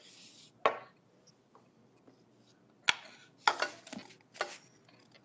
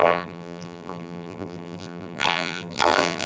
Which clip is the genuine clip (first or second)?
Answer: first